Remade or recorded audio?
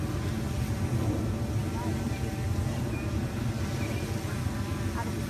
recorded